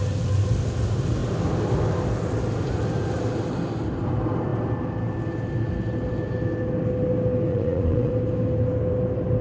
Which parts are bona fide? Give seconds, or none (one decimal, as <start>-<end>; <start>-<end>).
0.0-7.5; 8.1-9.4